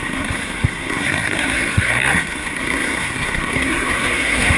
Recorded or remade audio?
remade